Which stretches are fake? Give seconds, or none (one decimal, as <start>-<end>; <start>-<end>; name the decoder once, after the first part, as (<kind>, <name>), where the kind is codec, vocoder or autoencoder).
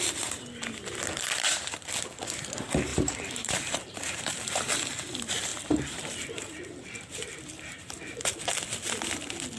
2.9-4.4 (vocoder, BigVGAN v2); 5.5-8.4